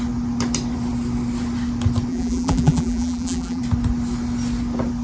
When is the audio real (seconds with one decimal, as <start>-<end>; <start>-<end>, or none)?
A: 0.0-2.1; 3.6-5.0